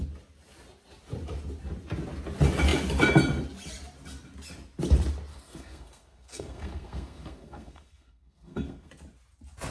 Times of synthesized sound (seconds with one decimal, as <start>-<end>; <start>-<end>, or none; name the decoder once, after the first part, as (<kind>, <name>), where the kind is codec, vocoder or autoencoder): 5.3-8.9 (codec, SNAC)